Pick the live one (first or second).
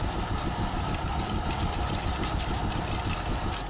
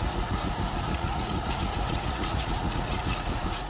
first